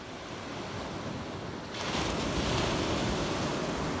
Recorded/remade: recorded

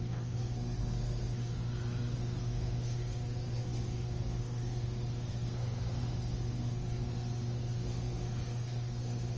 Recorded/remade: remade